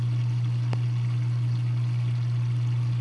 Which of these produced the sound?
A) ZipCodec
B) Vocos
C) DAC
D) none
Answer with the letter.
D